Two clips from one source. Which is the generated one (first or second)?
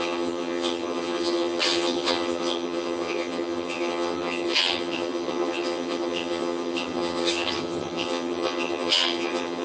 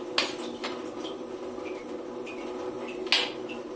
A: first